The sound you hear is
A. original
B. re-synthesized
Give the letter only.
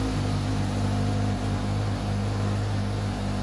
A